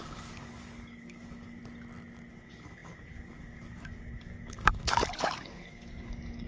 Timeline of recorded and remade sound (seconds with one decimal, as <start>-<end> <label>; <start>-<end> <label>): 0.0-1.6 remade; 1.6-2.3 recorded; 2.3-6.5 remade